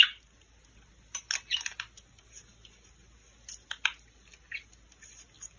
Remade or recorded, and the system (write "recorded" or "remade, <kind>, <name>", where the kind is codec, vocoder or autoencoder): recorded